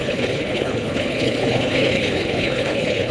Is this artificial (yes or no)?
yes